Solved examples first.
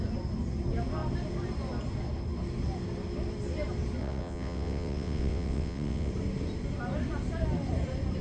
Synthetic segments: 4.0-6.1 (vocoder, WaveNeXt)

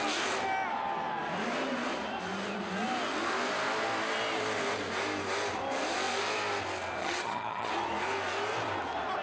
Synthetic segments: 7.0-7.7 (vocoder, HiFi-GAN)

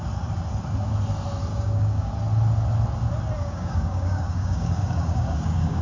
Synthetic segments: 1.5-2.1 (codec, DAC); 3.4-5.8

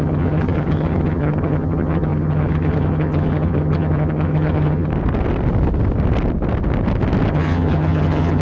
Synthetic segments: 0.0-4.9 (vocoder, HiFi-GAN); 7.3-8.4

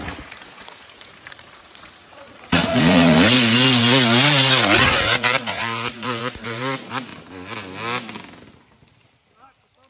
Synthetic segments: 0.0-7.1 (vocoder, Vocos)